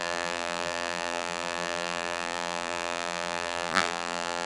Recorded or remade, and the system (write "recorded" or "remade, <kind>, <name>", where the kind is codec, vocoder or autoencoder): remade, vocoder, BigVGAN v2